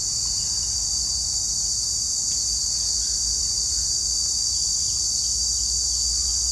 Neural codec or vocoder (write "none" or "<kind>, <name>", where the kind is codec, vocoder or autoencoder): none